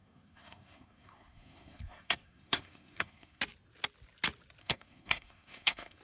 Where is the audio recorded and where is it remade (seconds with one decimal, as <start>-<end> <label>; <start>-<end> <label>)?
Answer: 0.0-3.4 remade; 3.4-4.6 recorded; 4.6-6.0 remade